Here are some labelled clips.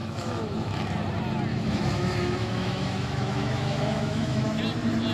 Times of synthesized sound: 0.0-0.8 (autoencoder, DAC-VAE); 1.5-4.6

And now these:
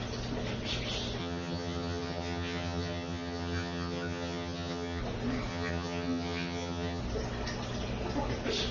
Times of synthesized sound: 1.2-5.0 (vocoder, HiFi-GAN); 5.5-7.0

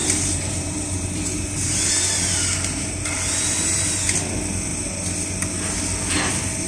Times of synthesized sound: 0.0-1.9 (vocoder, BigVGAN v2)

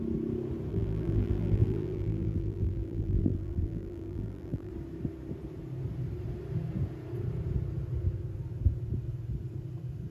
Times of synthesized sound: 0.7-4.7 (vocoder, BigVGAN v2)

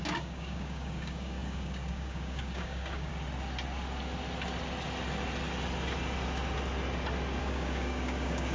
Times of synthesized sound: 0.0-3.1 (codec, DAC); 7.4-8.5

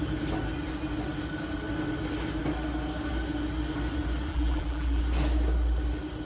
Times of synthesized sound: 4.3-5.0 (vocoder, BigVGAN v2)

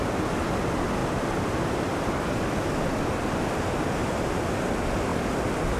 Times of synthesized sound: none